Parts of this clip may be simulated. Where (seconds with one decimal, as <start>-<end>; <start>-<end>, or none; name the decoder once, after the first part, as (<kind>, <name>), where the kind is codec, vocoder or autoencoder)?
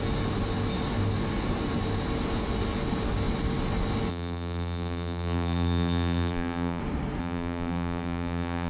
4.1-6.8 (vocoder, BigVGAN v2); 7.2-8.7